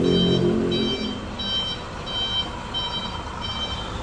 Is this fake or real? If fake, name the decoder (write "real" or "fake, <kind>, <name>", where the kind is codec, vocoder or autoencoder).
real